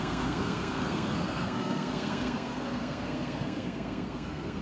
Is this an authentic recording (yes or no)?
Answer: no